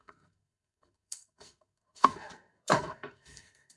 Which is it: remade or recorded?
remade